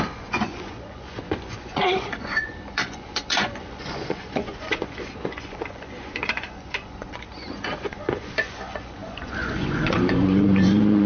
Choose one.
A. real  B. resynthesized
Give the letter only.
B